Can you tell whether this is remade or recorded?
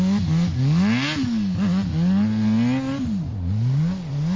recorded